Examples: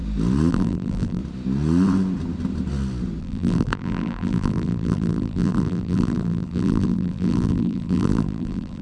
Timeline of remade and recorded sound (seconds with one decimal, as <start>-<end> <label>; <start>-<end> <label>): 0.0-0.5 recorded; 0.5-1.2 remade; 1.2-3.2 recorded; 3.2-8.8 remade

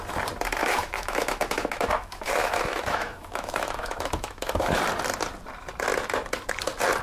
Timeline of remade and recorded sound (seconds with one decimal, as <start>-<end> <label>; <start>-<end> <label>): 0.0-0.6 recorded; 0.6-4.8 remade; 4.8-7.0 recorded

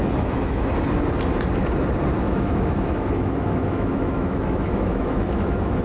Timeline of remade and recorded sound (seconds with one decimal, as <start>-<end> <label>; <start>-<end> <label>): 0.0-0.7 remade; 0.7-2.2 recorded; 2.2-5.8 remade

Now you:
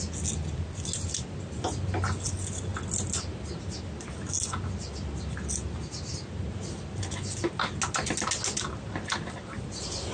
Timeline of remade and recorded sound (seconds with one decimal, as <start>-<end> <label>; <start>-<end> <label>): 0.0-10.1 recorded